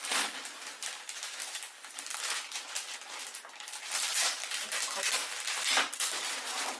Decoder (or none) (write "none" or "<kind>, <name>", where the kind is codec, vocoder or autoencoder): none